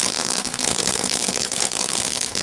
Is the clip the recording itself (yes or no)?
no